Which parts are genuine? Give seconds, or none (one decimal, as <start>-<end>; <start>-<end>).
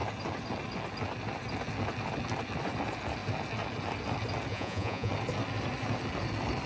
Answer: 0.0-4.5; 5.1-6.7